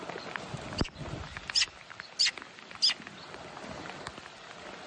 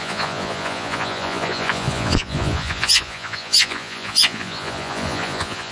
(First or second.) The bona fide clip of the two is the first